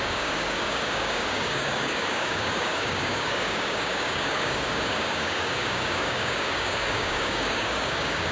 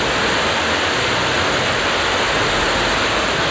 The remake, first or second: first